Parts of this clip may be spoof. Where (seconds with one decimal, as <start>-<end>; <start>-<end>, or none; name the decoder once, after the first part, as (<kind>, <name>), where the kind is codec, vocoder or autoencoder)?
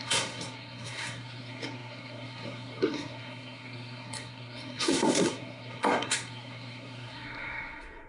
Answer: 0.0-8.1 (codec, SNAC)